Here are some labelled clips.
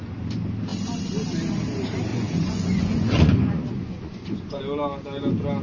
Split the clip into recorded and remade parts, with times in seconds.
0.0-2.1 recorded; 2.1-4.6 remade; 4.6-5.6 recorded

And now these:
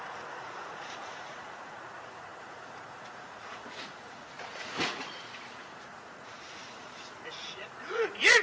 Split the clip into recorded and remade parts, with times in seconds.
0.0-8.4 remade

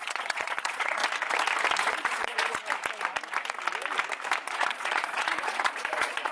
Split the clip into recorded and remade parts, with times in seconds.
0.0-1.0 remade; 1.0-1.8 recorded; 1.8-2.6 remade; 2.6-4.5 recorded; 4.5-6.3 remade

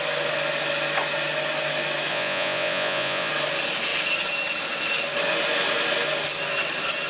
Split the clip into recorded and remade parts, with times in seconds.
0.0-2.1 recorded; 2.1-3.3 remade; 3.3-7.1 recorded

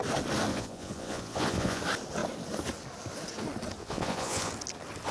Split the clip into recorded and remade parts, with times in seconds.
0.0-0.5 recorded; 0.5-1.8 remade; 1.8-3.8 recorded; 3.8-4.5 remade; 4.5-5.1 recorded